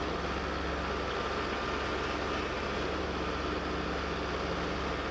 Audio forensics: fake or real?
real